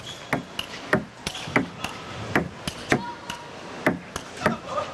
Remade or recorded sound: recorded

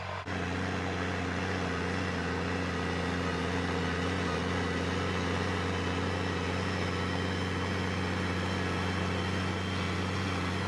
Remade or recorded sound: recorded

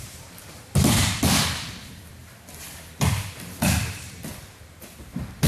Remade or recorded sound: remade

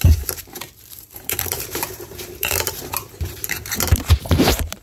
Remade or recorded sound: remade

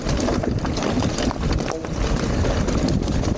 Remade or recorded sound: recorded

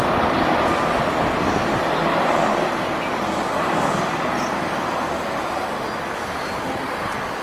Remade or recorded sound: recorded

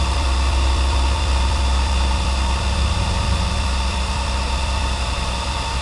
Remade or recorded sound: remade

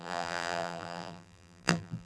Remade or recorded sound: remade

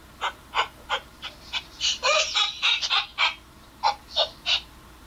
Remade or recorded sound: remade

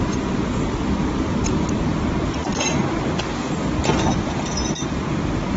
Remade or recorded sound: recorded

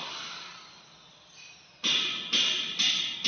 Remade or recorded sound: recorded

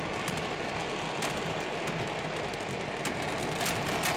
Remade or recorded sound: recorded